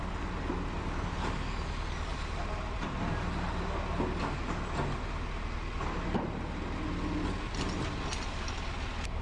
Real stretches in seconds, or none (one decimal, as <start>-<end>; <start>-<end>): 0.0-2.1; 3.1-9.2